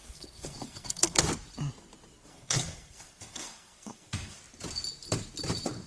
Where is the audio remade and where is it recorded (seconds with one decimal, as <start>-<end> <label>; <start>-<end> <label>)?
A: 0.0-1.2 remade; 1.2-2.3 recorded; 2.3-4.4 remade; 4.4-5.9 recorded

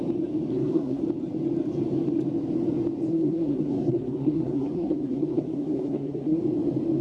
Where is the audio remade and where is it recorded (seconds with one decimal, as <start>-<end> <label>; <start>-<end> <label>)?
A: 0.0-0.5 recorded; 0.5-1.0 remade; 1.0-3.1 recorded; 3.1-6.4 remade; 6.4-7.0 recorded

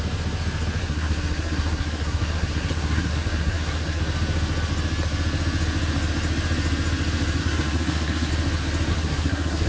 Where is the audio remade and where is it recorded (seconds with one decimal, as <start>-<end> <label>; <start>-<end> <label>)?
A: 0.0-0.8 recorded; 0.8-4.0 remade; 4.0-7.4 recorded; 7.4-8.3 remade; 8.3-8.9 recorded; 8.9-9.7 remade

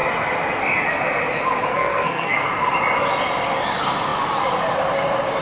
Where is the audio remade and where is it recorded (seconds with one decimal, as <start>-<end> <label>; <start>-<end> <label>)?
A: 0.0-1.7 recorded; 1.7-2.5 remade; 2.5-5.4 recorded

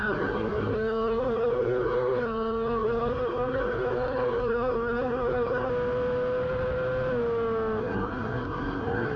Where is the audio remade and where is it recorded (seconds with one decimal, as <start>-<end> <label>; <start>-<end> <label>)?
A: 0.0-5.7 remade; 5.7-7.8 recorded; 7.8-9.2 remade